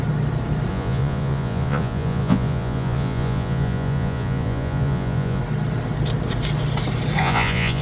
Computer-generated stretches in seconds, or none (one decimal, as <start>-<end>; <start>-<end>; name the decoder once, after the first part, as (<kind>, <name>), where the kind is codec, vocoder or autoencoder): 0.7-5.4 (vocoder, Vocos); 7.2-7.8